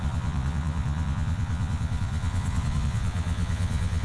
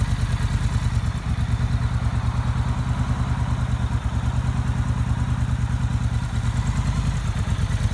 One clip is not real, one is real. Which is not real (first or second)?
first